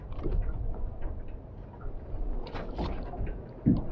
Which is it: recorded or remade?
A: recorded